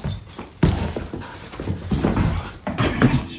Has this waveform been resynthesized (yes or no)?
yes